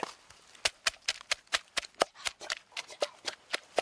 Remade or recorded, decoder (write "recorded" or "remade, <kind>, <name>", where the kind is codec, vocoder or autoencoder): recorded